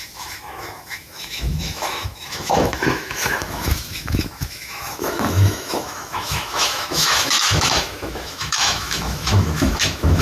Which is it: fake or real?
fake